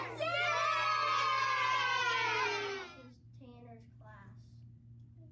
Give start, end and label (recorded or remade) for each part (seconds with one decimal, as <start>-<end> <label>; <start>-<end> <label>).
0.0-5.3 recorded